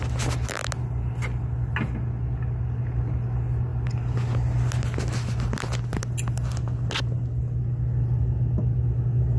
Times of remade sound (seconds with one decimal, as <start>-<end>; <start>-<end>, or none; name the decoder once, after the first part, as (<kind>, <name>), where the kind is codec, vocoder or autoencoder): none

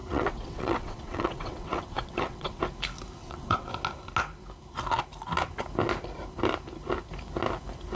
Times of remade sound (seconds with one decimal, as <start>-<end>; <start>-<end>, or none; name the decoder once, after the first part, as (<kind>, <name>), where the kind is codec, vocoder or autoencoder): 0.0-2.6 (vocoder, WaveNeXt); 3.2-3.7